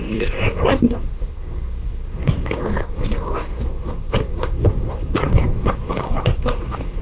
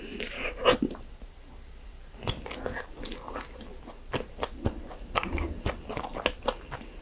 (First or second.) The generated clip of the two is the first